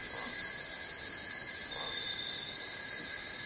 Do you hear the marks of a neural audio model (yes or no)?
no